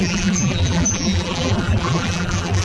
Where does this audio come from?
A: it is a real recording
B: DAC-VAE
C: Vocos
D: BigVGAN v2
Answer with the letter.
D